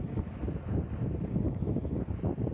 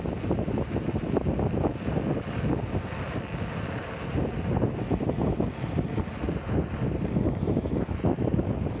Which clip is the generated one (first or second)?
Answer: first